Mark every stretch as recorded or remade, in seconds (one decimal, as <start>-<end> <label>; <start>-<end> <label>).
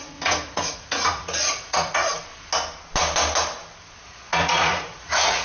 0.0-2.2 remade; 2.2-4.0 recorded; 4.0-5.4 remade